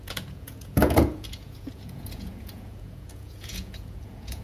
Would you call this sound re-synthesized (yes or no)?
yes